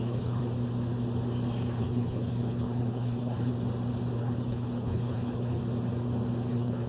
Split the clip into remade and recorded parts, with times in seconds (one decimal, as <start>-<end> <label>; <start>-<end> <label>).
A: 0.0-0.4 remade; 0.4-1.8 recorded; 1.8-3.5 remade; 3.5-4.2 recorded; 4.2-5.6 remade; 5.6-6.5 recorded; 6.5-6.9 remade